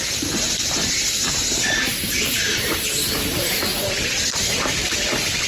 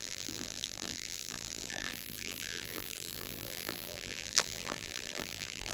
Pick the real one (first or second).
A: first